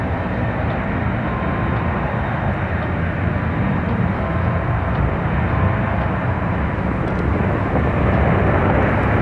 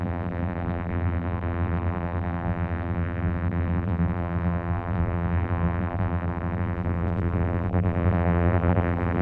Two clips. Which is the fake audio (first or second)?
second